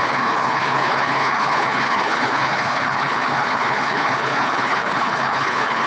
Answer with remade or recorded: remade